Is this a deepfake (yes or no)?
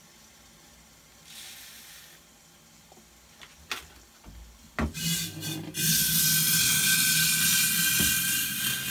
no